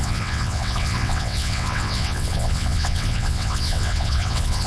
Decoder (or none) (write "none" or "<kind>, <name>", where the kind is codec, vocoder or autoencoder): vocoder, WaveNeXt